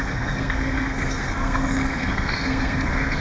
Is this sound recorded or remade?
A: remade